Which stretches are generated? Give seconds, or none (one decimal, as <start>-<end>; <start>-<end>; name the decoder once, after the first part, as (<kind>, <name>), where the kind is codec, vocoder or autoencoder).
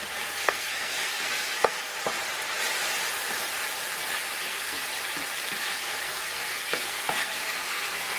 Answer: 0.0-1.9 (codec, SNAC); 4.4-4.9; 5.6-8.2